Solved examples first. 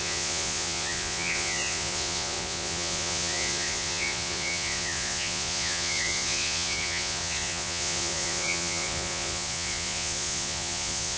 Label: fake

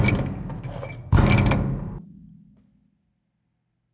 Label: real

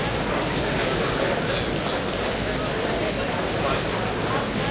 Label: real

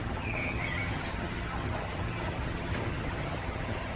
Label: fake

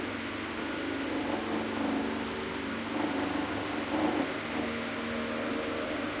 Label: real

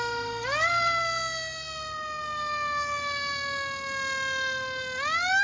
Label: real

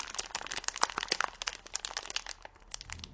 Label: real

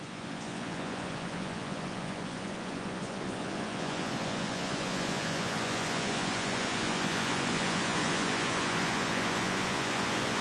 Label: fake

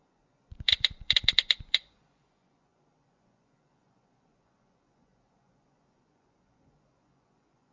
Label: fake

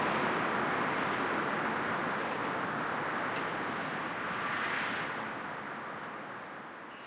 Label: real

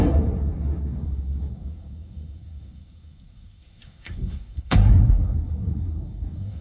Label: fake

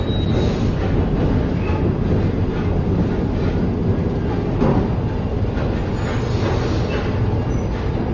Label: real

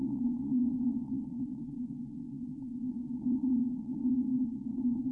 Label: fake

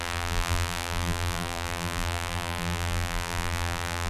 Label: fake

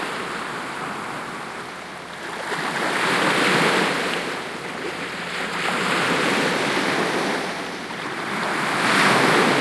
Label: real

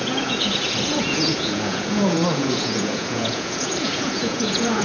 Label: fake